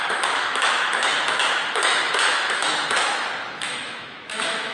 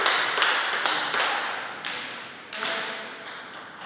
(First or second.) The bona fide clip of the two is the second